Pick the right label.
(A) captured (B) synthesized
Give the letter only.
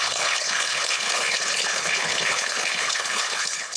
B